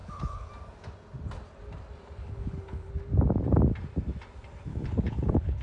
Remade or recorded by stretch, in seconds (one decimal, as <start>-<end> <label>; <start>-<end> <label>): 0.0-0.5 remade; 0.5-2.2 recorded; 2.2-2.9 remade; 2.9-4.7 recorded; 4.7-5.6 remade